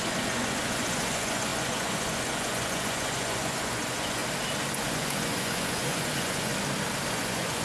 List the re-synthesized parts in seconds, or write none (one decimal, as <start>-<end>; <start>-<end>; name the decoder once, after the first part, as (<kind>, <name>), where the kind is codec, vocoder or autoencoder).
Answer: 0.0-4.2 (vocoder, Vocos); 4.7-6.5; 7.1-7.6

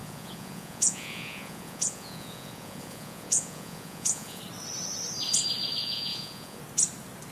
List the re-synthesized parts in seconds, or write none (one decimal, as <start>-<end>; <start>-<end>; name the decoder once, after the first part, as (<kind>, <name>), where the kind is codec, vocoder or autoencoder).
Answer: 0.0-4.4 (vocoder, Vocos); 5.8-6.6

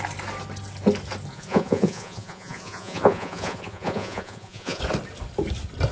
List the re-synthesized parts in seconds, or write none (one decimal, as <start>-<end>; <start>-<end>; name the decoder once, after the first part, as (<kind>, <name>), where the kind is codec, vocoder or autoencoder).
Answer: 1.3-4.8 (vocoder, Vocos)

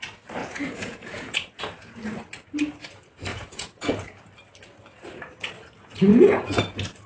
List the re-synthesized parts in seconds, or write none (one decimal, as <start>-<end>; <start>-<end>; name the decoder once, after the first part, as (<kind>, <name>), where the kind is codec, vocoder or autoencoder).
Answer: 0.4-1.6 (vocoder, Vocos); 3.3-4.2; 6.1-6.6

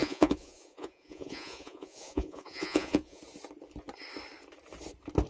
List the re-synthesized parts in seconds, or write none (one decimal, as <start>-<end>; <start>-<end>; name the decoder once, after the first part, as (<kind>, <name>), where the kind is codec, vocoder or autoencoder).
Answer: 0.0-3.2 (vocoder, Vocos)

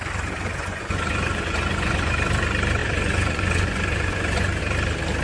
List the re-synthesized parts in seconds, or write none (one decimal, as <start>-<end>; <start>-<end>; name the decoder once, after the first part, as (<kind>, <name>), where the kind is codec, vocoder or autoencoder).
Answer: 0.5-2.1 (vocoder, Vocos); 2.8-4.6